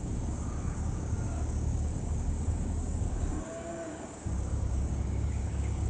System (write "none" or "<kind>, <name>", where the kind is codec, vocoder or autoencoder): codec, DAC